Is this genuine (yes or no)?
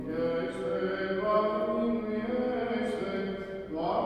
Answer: yes